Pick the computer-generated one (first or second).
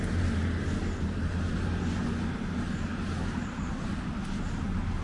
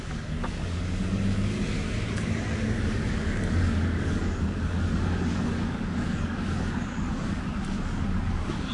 second